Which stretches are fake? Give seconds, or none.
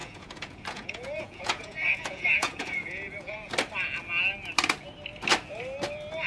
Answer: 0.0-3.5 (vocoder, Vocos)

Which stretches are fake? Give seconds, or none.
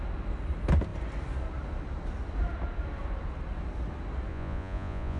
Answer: 4.3-5.2 (vocoder, Vocos)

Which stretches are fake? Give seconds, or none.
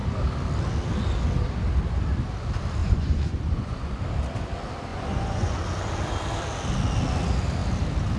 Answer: 2.8-4.0 (vocoder, Vocos); 4.9-5.6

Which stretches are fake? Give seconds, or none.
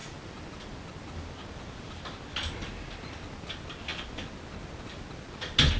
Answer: none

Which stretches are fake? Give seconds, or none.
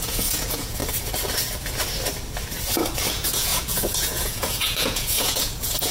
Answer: 0.0-0.8 (vocoder, Vocos); 3.1-5.9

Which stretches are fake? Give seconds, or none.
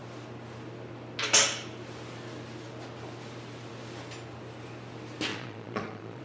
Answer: 5.3-6.2 (vocoder, Vocos)